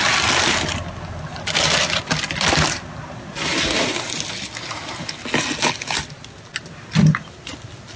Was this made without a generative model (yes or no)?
yes